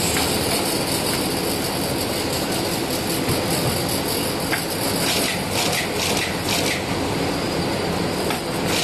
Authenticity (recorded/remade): recorded